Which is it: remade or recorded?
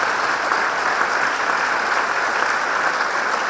recorded